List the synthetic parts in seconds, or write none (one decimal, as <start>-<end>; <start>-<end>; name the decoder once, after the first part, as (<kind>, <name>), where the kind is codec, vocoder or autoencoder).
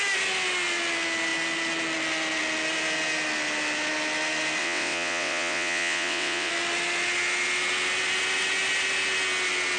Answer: 4.6-6.5 (vocoder, WaveNeXt)